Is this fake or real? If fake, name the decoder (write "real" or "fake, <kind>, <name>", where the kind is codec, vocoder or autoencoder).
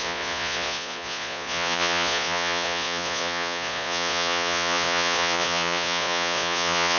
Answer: fake, vocoder, Vocos